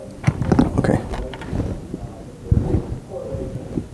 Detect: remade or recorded recorded